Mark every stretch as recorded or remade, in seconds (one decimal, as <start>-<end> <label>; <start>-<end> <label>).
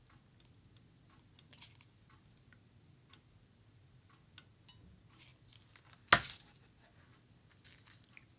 0.0-8.4 recorded